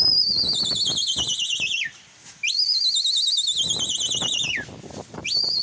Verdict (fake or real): real